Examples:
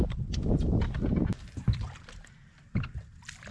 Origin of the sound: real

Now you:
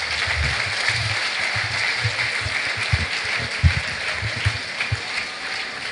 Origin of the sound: real